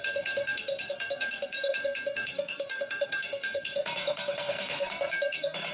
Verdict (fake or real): fake